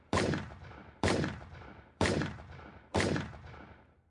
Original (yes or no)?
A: no